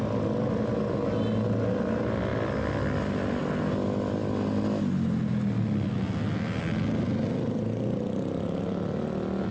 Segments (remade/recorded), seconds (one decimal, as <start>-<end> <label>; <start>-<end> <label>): 0.0-9.5 recorded